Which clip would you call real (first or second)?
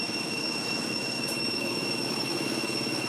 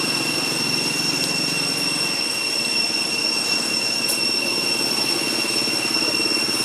second